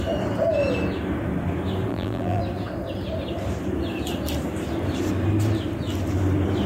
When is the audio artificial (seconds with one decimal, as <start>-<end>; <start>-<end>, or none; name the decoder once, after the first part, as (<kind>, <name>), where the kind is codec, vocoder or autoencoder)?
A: 1.9-2.4 (vocoder, BigVGAN v2)